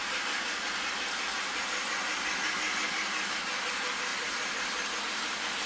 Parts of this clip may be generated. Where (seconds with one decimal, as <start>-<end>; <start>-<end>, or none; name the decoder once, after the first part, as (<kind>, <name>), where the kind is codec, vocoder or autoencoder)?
none